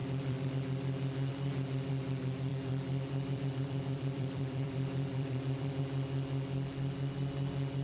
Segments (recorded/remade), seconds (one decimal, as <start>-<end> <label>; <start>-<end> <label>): 0.0-0.5 remade; 0.5-2.5 recorded; 2.5-5.8 remade; 5.8-7.8 recorded